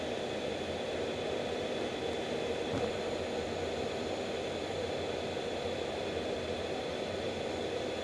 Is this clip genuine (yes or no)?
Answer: yes